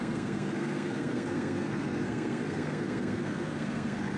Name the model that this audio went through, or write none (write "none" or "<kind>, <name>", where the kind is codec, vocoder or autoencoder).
codec, SNAC